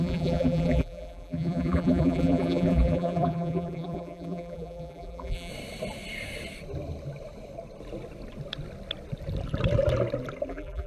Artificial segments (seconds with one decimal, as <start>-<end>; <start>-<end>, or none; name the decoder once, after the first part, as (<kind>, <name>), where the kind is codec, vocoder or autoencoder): 0.0-5.5 (vocoder, BigVGAN v2); 10.5-10.9